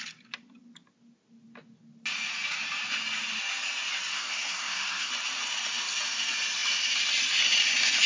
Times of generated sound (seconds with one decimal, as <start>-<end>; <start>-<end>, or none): 4.1-5.1